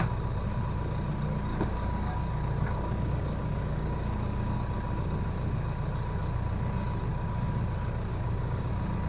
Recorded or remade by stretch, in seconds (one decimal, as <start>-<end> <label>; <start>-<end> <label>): 0.0-1.5 recorded; 1.5-4.6 remade; 4.6-7.1 recorded; 7.1-7.6 remade; 7.6-8.1 recorded; 8.1-8.7 remade; 8.7-9.1 recorded

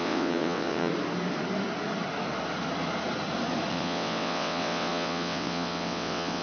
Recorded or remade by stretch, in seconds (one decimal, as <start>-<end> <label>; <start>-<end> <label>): 0.0-0.9 remade; 0.9-3.7 recorded; 3.7-6.4 remade

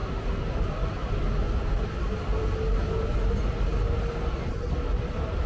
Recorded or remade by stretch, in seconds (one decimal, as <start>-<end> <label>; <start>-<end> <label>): 0.0-5.5 recorded

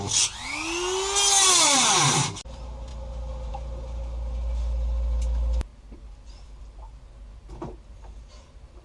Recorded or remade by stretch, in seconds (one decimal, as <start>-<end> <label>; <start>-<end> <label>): 0.0-5.7 recorded; 5.7-7.1 remade; 7.1-8.8 recorded

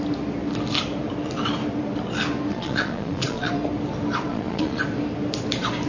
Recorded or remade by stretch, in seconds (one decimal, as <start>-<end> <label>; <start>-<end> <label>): 0.0-2.5 recorded; 2.5-3.5 remade; 3.5-4.3 recorded; 4.3-4.8 remade; 4.8-5.9 recorded